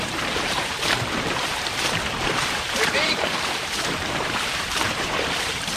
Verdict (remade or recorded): remade